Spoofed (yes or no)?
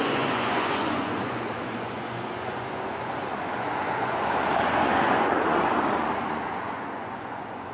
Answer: yes